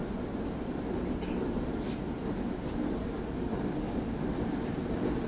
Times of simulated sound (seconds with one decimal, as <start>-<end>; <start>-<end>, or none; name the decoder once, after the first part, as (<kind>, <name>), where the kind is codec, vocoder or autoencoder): none